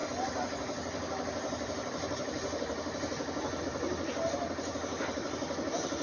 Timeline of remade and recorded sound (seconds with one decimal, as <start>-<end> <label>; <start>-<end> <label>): 0.0-6.0 recorded